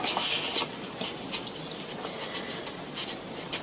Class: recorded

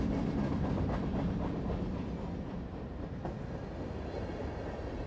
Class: recorded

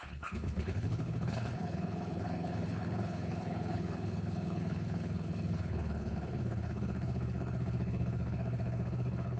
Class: remade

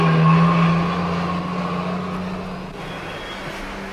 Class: recorded